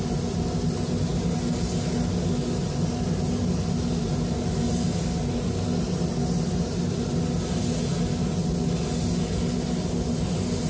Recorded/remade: recorded